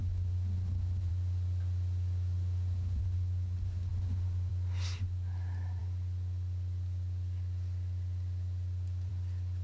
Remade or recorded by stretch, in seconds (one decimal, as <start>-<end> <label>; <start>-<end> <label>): 0.0-9.6 recorded